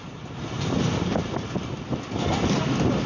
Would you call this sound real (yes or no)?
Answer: yes